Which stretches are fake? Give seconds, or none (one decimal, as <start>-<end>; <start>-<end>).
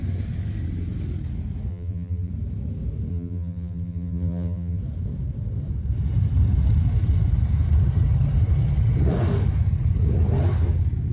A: 1.7-2.3; 3.1-4.8